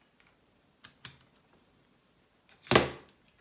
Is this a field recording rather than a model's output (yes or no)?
yes